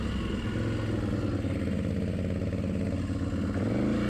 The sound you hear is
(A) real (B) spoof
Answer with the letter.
A